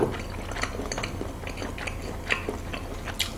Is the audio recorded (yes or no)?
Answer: yes